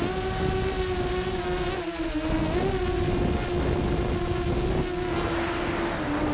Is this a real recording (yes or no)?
yes